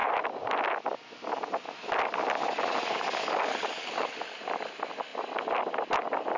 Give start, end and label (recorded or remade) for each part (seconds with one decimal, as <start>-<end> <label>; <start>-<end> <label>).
0.0-6.4 recorded